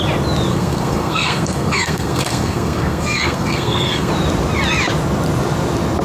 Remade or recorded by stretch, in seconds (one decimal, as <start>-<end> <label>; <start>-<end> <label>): 0.0-0.5 recorded; 0.5-4.1 remade; 4.1-6.0 recorded